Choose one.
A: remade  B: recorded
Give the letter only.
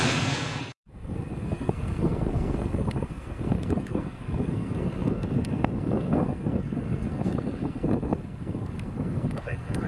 A